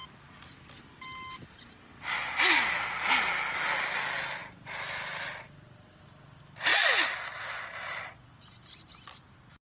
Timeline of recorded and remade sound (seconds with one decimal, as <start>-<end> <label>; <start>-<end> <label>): 0.0-9.6 recorded